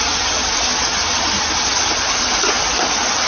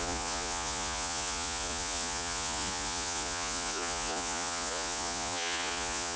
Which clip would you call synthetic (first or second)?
second